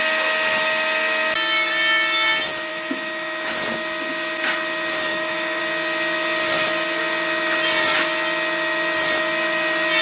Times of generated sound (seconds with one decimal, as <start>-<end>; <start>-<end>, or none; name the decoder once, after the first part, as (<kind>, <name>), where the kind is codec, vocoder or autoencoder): 2.7-3.5 (autoencoder, DAC-VAE); 5.1-5.6